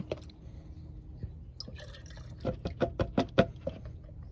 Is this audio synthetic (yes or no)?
no